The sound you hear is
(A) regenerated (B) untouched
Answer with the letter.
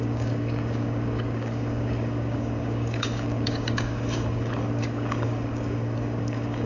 A